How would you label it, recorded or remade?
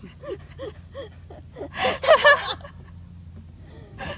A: recorded